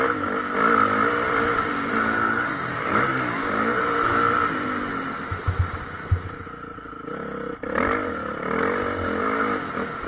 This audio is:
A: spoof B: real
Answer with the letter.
B